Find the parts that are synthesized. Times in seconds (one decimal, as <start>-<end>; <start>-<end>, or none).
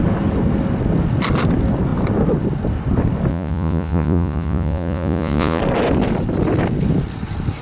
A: 3.3-5.6